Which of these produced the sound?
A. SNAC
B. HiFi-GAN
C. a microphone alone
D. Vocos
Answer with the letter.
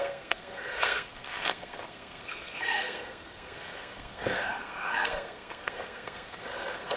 A